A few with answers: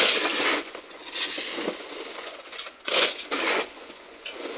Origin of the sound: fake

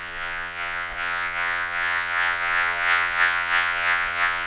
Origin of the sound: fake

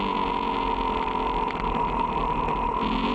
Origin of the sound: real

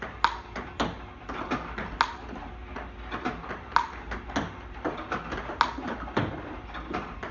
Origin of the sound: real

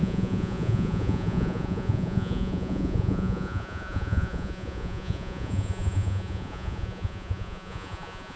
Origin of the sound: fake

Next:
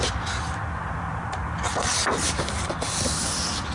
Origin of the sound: real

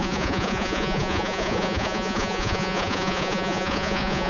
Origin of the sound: fake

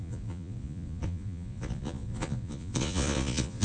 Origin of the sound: fake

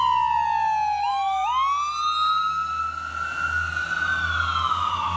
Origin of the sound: real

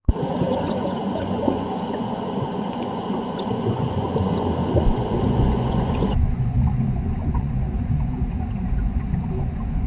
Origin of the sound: fake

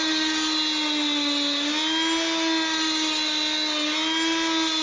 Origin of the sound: real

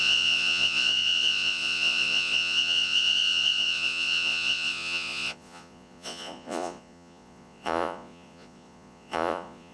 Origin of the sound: fake